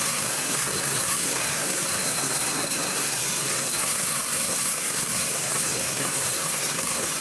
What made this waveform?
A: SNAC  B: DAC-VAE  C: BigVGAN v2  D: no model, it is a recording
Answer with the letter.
A